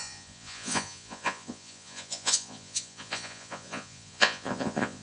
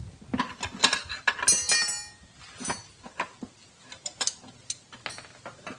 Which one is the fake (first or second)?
first